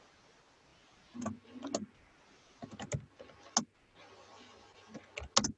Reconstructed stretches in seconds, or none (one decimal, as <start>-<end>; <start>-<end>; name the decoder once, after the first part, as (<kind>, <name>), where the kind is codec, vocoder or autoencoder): none